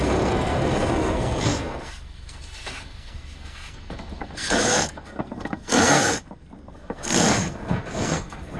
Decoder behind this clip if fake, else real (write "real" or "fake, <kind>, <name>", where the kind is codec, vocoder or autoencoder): fake, codec, SNAC